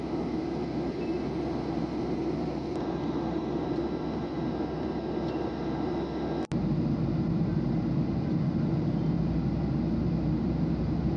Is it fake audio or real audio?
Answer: real